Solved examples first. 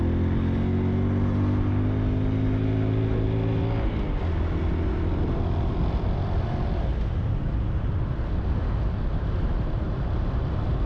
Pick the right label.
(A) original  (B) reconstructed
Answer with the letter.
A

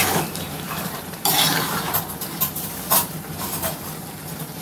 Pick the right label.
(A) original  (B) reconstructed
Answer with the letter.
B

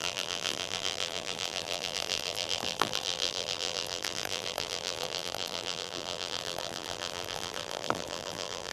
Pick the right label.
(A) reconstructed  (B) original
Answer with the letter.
A